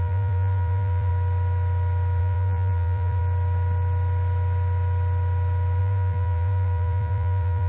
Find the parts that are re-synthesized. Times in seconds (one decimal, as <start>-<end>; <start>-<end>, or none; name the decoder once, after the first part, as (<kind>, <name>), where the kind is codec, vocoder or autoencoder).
0.0-1.1 (vocoder, BigVGAN v2); 2.2-3.2; 5.8-7.7